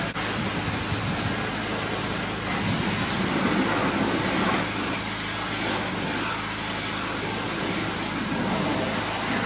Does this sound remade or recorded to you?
recorded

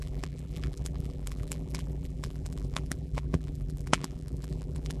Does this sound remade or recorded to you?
remade